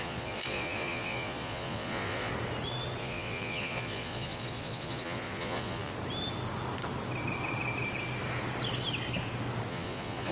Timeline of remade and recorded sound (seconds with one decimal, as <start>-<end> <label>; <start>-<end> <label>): 0.0-2.3 remade; 2.3-3.0 recorded; 3.0-5.9 remade; 5.9-9.7 recorded; 9.7-10.3 remade